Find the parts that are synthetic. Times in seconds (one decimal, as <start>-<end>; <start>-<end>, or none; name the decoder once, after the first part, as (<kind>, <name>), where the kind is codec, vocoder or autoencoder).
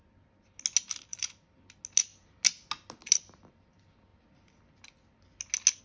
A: 1.1-1.6 (vocoder, BigVGAN v2)